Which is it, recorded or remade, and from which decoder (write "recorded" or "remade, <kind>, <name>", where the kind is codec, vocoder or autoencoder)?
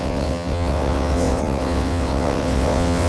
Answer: remade, vocoder, WaveNeXt